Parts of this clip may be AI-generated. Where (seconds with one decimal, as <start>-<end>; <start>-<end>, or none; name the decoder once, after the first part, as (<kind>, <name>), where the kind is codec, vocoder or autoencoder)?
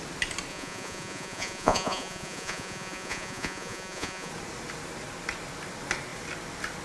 0.5-4.3 (vocoder, Vocos)